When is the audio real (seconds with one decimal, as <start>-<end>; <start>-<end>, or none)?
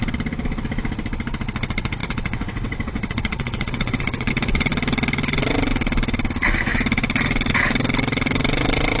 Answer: 0.0-2.0; 4.3-9.0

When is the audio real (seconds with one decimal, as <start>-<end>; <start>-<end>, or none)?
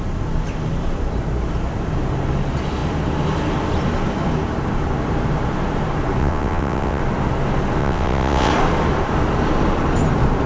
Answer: 0.0-6.2; 7.0-7.8; 8.5-10.5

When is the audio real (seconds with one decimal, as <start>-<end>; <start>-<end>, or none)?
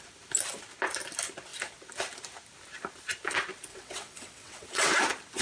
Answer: 0.0-3.7; 5.0-5.4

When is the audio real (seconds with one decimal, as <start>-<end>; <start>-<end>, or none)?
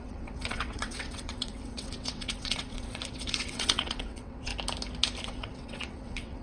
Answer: 4.5-5.2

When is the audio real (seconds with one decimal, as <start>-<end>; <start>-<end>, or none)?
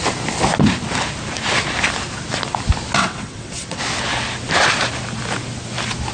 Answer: 0.0-3.0; 3.8-6.1